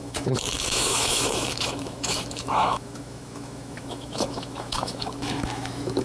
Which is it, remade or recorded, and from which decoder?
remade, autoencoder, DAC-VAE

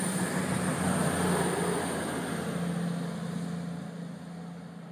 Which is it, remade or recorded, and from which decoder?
recorded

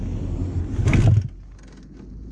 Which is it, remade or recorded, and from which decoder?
recorded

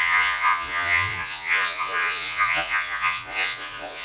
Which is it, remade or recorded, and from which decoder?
remade, vocoder, Vocos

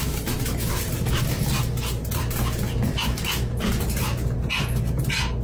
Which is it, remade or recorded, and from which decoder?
recorded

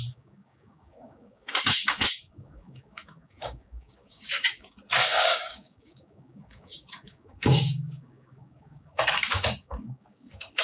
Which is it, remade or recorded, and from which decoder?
remade, codec, DAC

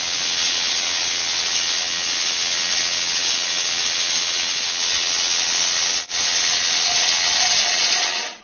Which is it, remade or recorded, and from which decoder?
remade, vocoder, Vocos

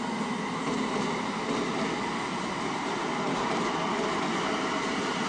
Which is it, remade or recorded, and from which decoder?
recorded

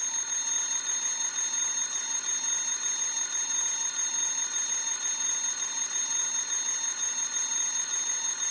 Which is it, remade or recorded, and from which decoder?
recorded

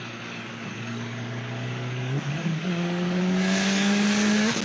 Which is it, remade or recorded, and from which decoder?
remade, codec, DAC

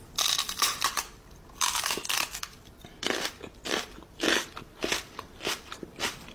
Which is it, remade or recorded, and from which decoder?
remade, vocoder, BigVGAN v2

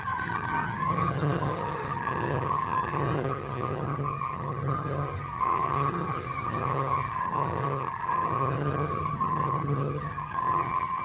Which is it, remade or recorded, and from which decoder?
remade, vocoder, HiFi-GAN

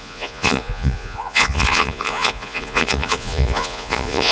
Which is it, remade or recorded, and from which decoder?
remade, vocoder, Vocos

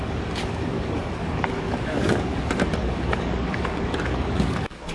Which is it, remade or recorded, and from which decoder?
remade, codec, DAC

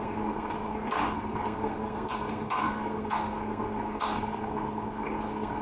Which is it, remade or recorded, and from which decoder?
remade, codec, SNAC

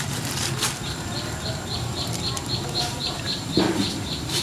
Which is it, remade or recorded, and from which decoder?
recorded